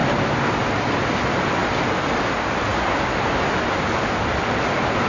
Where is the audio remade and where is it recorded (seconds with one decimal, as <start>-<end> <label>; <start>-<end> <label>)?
0.0-5.1 recorded